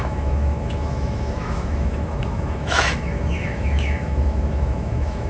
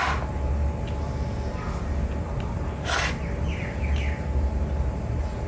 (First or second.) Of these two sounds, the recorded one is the second